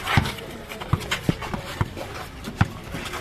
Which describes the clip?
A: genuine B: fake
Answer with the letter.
B